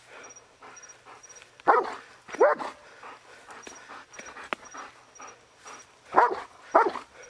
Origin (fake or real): real